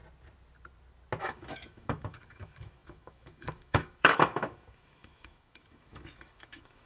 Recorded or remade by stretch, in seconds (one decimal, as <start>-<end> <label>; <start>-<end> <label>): 0.0-1.2 recorded; 1.2-6.9 remade